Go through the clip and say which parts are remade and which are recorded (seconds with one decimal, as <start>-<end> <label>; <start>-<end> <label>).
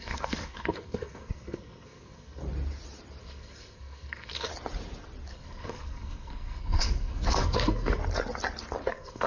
0.0-2.4 remade; 2.4-3.2 recorded; 3.2-4.5 remade; 4.5-5.3 recorded; 5.3-8.0 remade; 8.0-8.9 recorded; 8.9-9.3 remade